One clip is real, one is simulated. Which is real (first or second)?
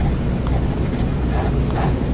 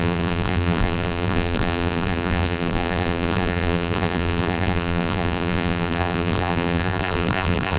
first